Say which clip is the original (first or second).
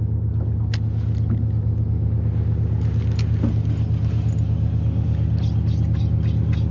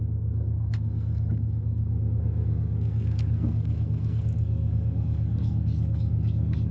first